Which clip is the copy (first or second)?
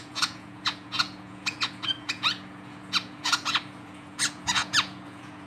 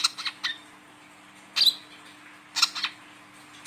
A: first